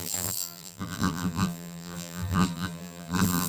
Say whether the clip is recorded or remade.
remade